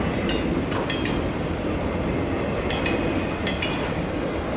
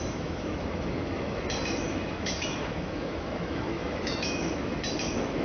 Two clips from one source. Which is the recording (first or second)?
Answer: first